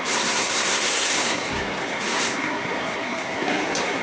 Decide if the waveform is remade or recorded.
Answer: remade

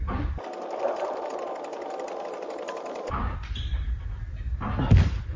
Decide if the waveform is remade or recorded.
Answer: recorded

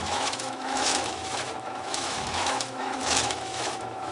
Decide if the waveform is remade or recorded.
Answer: remade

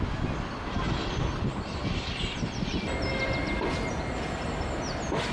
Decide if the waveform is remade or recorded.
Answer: recorded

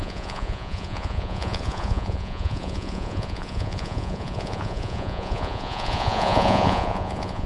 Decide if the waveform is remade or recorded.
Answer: remade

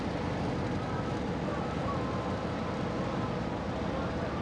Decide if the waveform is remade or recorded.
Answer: recorded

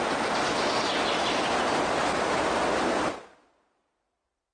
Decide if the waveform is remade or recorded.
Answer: recorded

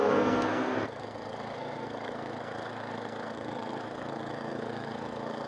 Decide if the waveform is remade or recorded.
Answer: remade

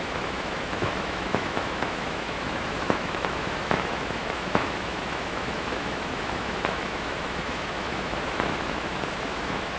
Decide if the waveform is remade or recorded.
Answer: remade